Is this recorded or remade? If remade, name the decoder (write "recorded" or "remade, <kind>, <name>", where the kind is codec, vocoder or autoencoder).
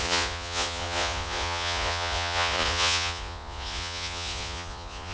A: remade, vocoder, Vocos